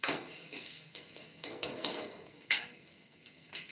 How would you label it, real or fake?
fake